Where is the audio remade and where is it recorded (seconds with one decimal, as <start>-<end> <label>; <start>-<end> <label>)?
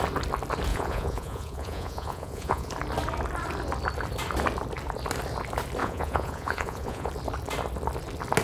0.0-0.7 recorded; 0.7-2.7 remade; 2.7-5.8 recorded; 5.8-7.1 remade; 7.1-8.4 recorded